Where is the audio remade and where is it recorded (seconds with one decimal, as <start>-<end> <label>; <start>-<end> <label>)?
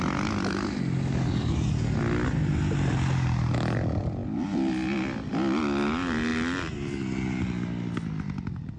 0.0-8.8 recorded